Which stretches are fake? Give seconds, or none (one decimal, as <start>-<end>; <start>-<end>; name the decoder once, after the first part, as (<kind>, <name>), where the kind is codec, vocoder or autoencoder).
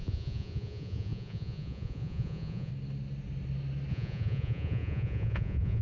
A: 0.0-2.7 (vocoder, Vocos); 3.9-5.8